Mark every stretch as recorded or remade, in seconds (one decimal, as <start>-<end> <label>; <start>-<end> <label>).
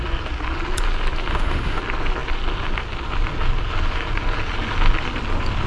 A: 0.0-1.3 recorded; 1.3-1.8 remade; 1.8-5.7 recorded